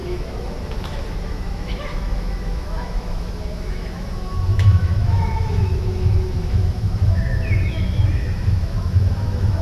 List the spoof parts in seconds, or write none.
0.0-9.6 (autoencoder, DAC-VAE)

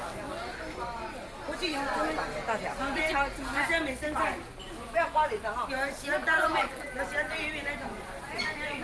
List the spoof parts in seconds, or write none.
6.2-7.0 (vocoder, BigVGAN v2)

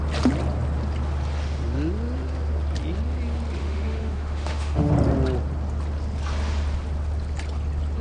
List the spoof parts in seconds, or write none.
3.6-4.9 (autoencoder, DAC-VAE)

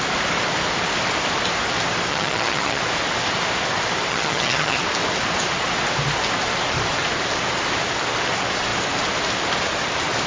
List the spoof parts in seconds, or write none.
2.1-2.8 (vocoder, HiFi-GAN); 4.1-4.8